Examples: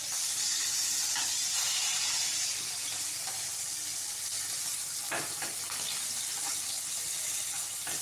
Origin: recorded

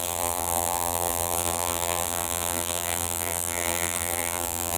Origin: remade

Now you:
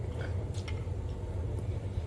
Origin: remade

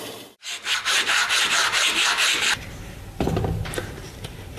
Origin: remade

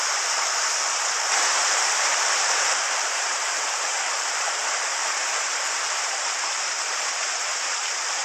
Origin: remade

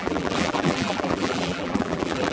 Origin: remade